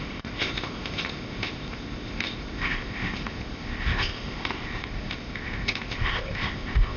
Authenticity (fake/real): fake